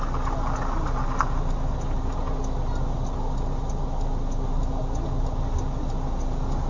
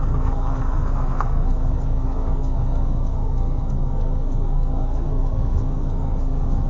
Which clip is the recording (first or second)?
first